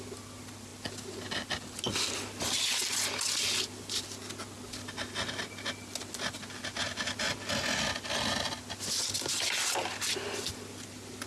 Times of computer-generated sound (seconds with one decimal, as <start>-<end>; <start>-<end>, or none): none